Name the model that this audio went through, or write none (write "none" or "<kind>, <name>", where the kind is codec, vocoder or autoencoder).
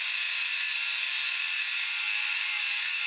none